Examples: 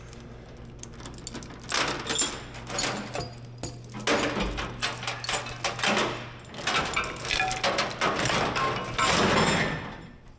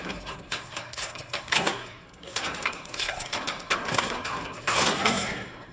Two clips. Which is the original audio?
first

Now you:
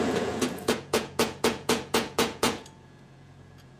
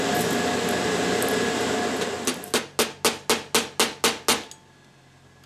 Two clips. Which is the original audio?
second